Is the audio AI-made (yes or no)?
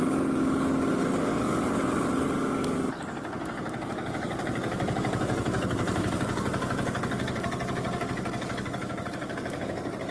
yes